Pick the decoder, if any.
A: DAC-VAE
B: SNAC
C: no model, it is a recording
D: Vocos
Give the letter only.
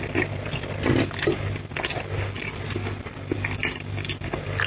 C